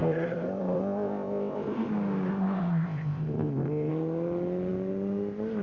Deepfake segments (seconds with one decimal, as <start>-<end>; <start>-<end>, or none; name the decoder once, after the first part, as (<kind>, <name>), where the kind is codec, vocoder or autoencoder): 0.0-1.9 (codec, ZipCodec); 2.3-3.9